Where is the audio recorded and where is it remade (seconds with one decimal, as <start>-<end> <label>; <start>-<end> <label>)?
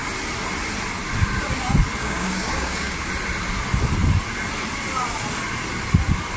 0.0-2.0 recorded; 2.0-3.1 remade; 3.1-6.4 recorded